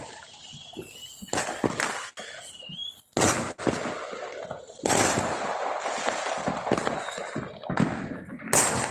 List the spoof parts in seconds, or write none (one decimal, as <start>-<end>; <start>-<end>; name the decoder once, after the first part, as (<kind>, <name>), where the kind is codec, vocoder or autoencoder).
none

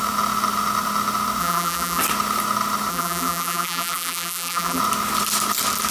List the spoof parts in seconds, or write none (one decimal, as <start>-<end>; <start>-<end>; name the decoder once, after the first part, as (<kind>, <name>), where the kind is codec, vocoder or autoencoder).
1.4-2.0 (vocoder, BigVGAN v2); 2.9-4.8

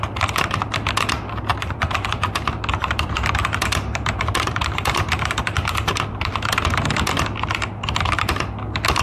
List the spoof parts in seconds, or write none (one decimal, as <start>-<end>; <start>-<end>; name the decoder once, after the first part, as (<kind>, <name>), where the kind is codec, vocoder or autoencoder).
1.5-2.3 (vocoder, BigVGAN v2); 2.8-6.3

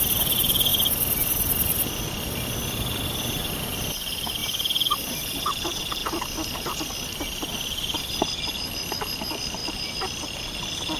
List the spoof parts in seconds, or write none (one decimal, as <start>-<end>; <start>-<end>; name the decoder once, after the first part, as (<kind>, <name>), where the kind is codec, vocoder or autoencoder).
0.7-3.6 (vocoder, BigVGAN v2); 4.4-5.4

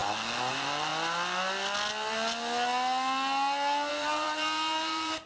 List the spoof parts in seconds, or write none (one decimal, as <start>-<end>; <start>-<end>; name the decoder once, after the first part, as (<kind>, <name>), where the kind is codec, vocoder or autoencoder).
0.5-0.9 (vocoder, BigVGAN v2); 3.9-5.3

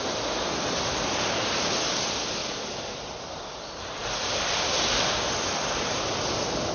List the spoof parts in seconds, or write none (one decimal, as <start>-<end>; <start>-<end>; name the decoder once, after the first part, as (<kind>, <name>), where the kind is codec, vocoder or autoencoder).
2.4-5.6 (vocoder, BigVGAN v2)

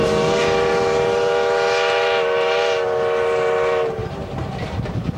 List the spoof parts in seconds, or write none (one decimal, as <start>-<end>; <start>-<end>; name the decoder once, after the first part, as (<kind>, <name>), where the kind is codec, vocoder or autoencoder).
4.0-5.2 (vocoder, BigVGAN v2)

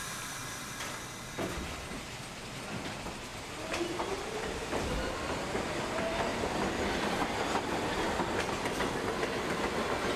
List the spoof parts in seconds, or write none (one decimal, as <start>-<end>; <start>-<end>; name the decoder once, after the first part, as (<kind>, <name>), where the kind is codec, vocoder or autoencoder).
0.4-2.3 (vocoder, BigVGAN v2); 3.3-5.8; 6.3-8.5